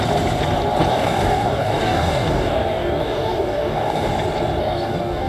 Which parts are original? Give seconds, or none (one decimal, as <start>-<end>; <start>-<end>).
0.0-0.9; 4.1-4.6